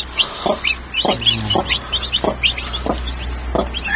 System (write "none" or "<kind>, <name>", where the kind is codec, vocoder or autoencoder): none